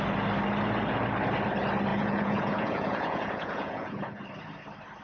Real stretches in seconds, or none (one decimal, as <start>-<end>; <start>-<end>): 0.0-1.9; 4.2-5.0